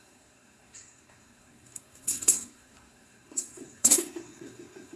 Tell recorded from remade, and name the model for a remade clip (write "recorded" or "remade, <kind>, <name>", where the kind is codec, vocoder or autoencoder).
remade, codec, SNAC